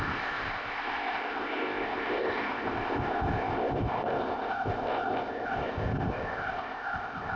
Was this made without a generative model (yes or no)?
no